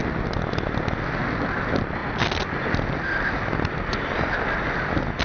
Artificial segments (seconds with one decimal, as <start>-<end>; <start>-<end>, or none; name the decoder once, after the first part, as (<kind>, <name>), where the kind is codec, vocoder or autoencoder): none